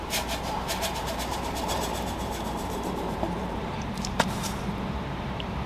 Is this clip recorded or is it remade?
remade